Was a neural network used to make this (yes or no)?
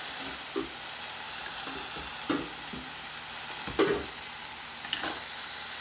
no